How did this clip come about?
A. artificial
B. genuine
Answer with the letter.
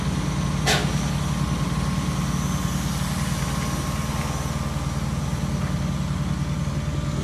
B